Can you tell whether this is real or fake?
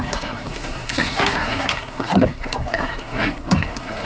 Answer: fake